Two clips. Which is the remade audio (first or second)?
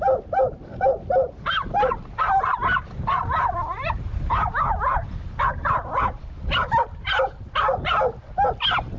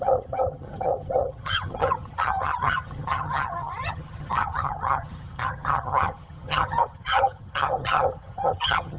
second